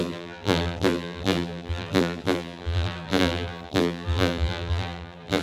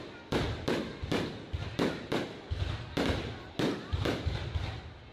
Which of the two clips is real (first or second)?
second